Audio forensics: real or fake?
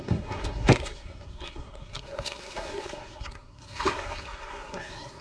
fake